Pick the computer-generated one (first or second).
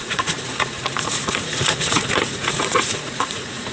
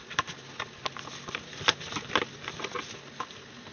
first